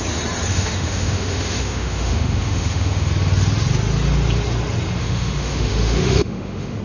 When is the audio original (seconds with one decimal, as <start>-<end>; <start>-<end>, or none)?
0.0-0.5; 3.1-5.0